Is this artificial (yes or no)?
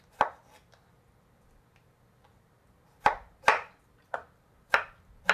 no